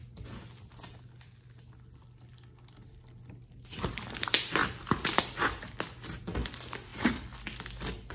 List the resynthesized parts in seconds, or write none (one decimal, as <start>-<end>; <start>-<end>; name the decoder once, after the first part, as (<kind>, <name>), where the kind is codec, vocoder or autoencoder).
4.6-5.2 (vocoder, BigVGAN v2)